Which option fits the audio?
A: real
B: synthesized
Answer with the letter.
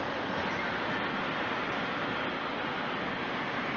A